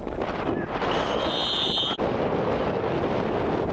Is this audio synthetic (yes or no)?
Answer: no